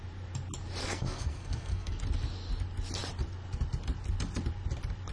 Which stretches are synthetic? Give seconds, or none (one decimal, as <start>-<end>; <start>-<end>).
0.8-2.0

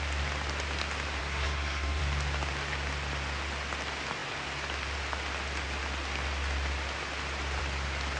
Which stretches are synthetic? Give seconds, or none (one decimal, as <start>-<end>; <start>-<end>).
1.2-2.0

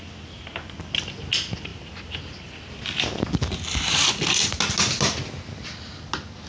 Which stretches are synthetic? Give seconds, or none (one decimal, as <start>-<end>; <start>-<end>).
none

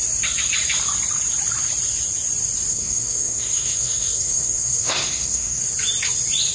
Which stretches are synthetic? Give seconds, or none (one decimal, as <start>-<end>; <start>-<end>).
2.7-5.6

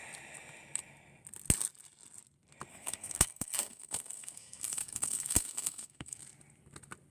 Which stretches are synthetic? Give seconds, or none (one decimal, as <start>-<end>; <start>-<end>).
2.7-6.2

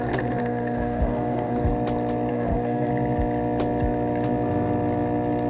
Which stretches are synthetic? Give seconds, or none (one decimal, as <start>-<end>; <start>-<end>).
0.0-1.7; 2.3-2.9

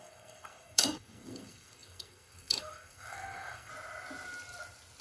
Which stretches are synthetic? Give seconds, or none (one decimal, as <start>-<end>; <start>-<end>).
0.0-3.7

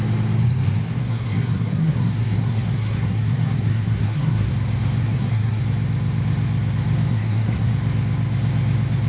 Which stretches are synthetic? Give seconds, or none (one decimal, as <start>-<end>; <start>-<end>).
1.0-4.5; 5.0-5.6; 7.1-7.7